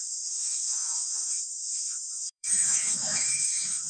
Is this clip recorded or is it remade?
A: remade